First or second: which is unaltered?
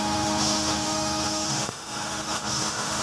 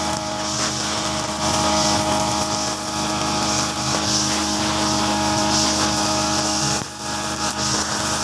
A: second